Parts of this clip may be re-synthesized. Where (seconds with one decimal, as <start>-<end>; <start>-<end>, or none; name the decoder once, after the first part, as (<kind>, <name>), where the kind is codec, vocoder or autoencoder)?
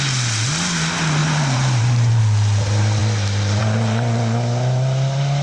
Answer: 1.2-2.2 (vocoder, BigVGAN v2)